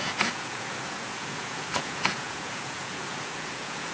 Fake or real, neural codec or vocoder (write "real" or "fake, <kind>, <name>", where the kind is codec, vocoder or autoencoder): fake, vocoder, Vocos